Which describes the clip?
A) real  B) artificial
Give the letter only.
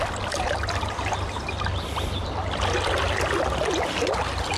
A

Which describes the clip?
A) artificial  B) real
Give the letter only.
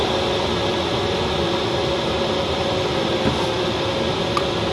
B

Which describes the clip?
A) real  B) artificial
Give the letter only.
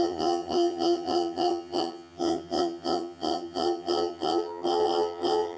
B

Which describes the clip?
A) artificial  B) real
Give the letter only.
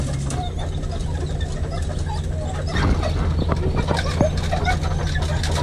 B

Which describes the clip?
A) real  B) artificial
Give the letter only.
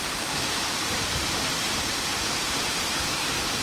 B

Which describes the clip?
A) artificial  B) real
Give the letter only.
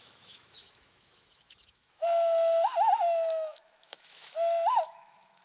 A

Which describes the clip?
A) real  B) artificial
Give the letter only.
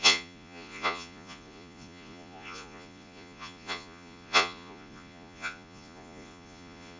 B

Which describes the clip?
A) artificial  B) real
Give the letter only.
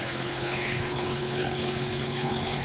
A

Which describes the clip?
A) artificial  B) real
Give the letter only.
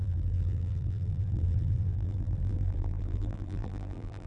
A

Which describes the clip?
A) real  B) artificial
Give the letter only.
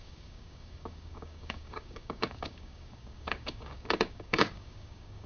B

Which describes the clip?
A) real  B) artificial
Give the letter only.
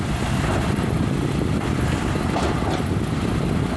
B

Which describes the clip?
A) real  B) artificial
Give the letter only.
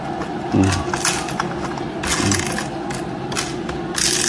A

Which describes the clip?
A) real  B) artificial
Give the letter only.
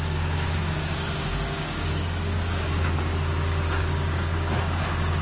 B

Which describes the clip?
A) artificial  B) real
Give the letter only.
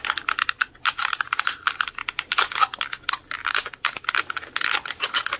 B